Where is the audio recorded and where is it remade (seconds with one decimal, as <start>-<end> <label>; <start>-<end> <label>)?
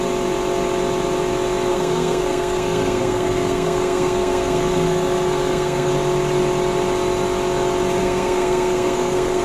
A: 0.0-1.7 recorded; 1.7-5.9 remade; 5.9-8.0 recorded; 8.0-9.4 remade